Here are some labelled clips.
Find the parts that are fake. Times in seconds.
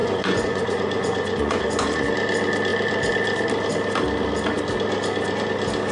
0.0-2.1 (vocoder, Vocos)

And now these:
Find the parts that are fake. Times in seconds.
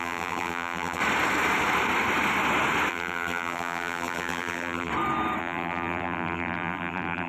0.0-1.0 (vocoder, BigVGAN v2); 2.9-4.9; 5.4-7.3